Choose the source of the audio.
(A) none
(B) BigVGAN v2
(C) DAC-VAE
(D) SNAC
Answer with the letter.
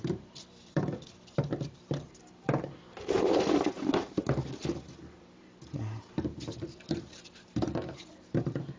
B